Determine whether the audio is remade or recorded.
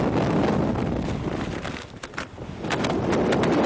recorded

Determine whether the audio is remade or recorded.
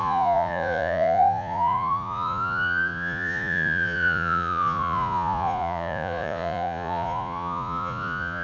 remade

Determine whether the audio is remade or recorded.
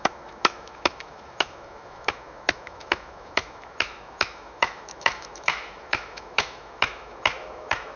remade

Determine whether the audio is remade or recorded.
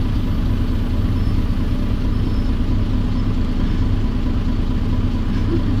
recorded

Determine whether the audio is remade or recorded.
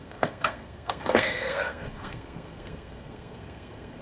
remade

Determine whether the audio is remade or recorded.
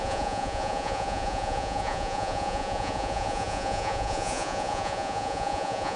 remade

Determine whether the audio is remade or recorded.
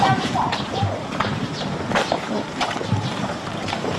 remade